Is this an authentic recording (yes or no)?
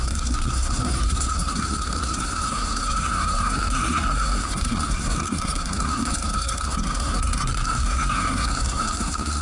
no